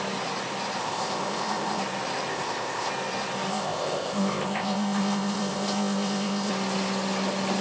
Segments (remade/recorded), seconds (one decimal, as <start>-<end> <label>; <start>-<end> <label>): 0.0-0.8 recorded; 0.8-1.8 remade; 1.8-2.3 recorded; 2.3-2.9 remade; 2.9-3.5 recorded; 3.5-6.5 remade; 6.5-7.6 recorded